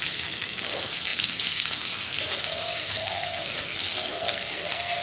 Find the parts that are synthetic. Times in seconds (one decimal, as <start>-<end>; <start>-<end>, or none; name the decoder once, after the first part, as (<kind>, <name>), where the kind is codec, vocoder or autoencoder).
0.0-5.0 (codec, SNAC)